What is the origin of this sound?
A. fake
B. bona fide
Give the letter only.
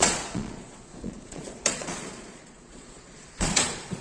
A